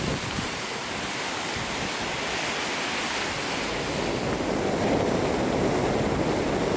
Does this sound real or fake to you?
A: real